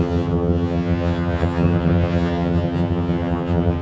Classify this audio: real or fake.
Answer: fake